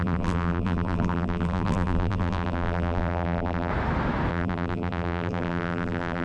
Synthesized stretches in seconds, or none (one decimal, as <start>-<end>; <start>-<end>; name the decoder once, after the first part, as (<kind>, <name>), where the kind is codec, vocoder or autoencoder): 0.0-3.7 (vocoder, BigVGAN v2); 4.3-6.2